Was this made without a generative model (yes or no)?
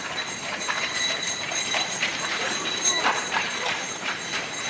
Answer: no